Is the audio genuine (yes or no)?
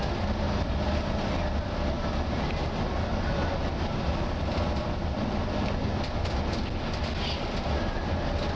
yes